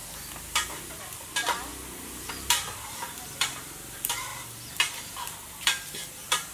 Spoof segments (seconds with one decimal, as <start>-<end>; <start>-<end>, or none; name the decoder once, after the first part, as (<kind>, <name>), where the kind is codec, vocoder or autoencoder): 1.0-1.7 (vocoder, BigVGAN v2); 2.3-6.5